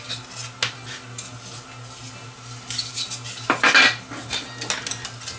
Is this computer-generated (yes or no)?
no